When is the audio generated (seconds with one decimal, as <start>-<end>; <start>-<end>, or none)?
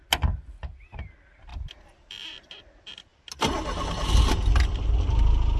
1.5-2.3